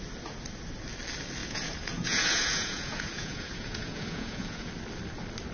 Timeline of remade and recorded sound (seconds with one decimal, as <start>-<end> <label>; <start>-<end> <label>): 0.0-1.4 recorded; 1.4-4.7 remade; 4.7-5.5 recorded